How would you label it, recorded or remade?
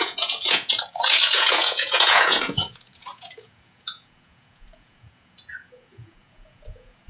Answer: remade